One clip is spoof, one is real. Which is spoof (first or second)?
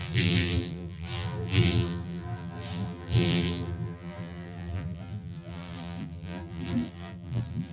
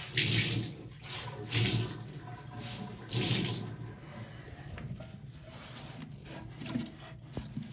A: first